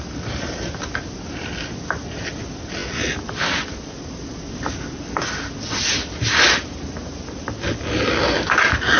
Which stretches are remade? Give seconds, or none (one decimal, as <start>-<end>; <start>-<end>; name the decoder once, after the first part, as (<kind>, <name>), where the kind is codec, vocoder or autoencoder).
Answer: none